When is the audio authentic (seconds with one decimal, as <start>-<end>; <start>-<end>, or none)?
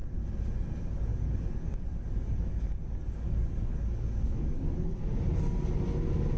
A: 0.0-1.1; 4.9-6.4